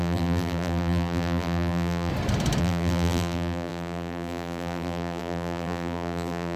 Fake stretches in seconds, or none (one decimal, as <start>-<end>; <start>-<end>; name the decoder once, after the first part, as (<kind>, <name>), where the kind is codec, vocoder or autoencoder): 0.0-2.1 (vocoder, BigVGAN v2); 2.6-6.6